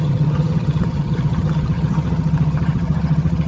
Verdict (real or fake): fake